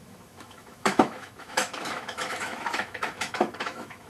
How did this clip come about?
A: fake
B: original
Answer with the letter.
A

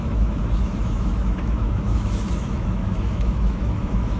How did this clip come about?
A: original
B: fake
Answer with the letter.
B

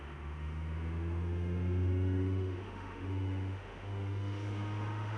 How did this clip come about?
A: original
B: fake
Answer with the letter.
B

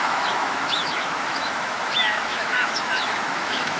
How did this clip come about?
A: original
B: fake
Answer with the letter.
B